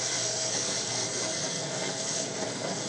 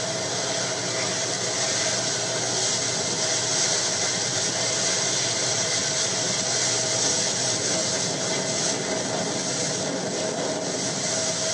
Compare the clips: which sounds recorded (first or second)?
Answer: second